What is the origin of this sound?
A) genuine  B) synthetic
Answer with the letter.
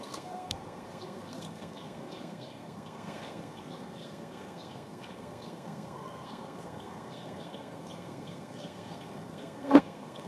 B